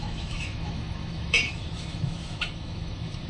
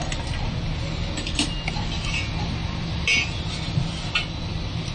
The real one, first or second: second